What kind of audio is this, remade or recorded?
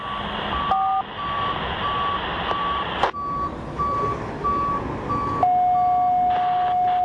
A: recorded